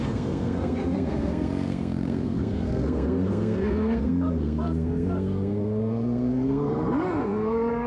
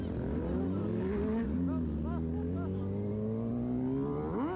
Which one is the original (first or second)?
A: second